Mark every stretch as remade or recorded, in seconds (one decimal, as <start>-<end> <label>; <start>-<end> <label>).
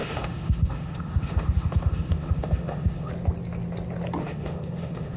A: 0.0-3.1 remade; 3.1-4.2 recorded; 4.2-5.2 remade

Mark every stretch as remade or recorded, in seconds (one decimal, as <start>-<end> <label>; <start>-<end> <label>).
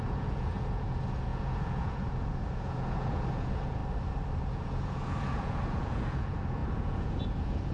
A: 0.0-3.8 remade; 3.8-4.5 recorded; 4.5-7.7 remade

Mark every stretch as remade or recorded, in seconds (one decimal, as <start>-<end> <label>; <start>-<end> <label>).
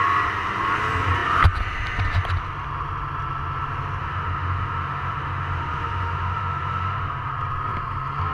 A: 0.0-4.0 recorded; 4.0-7.3 remade; 7.3-8.3 recorded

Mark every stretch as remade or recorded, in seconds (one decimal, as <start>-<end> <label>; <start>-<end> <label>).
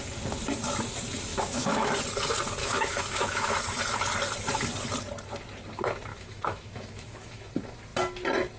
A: 0.0-1.3 recorded; 1.3-1.9 remade; 1.9-2.6 recorded; 2.6-3.6 remade; 3.6-6.1 recorded; 6.1-7.5 remade; 7.5-8.6 recorded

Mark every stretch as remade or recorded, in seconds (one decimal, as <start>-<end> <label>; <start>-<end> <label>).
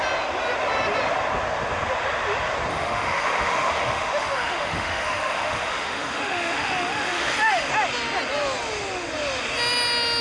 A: 0.0-2.7 recorded; 2.7-7.7 remade; 7.7-10.2 recorded